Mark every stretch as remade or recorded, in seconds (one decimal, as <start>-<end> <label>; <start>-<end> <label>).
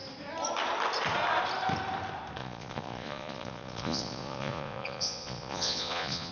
0.0-2.4 recorded; 2.4-6.3 remade